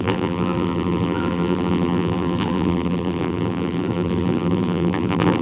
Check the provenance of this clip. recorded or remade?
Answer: remade